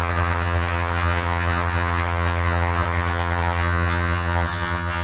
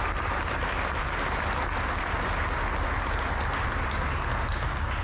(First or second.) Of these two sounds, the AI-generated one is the first